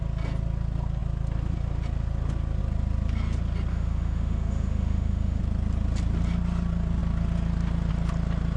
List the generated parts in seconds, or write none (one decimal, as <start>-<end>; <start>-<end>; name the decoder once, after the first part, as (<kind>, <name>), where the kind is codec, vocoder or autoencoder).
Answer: 3.7-5.4 (autoencoder, DAC-VAE)